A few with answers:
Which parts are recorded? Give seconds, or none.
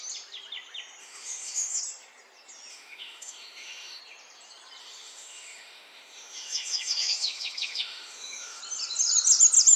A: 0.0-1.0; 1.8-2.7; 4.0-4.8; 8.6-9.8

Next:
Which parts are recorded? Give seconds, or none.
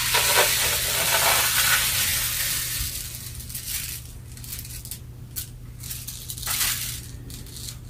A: 0.0-7.9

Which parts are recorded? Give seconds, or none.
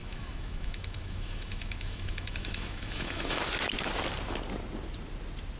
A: 3.4-5.6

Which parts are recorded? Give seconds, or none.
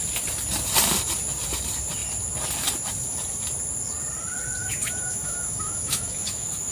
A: 0.0-4.6